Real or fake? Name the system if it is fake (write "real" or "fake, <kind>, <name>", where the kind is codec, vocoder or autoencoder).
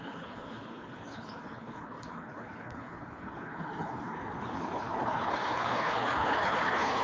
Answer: fake, codec, HILCodec